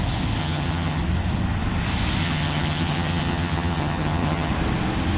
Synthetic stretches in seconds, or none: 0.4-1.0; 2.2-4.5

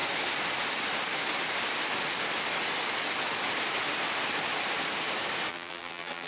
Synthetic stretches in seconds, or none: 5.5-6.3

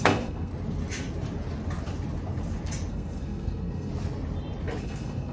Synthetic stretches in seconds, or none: 0.0-0.5; 2.9-3.9; 4.8-5.3